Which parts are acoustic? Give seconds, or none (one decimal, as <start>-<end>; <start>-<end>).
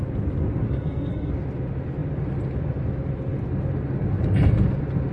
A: 0.0-0.7; 1.3-5.1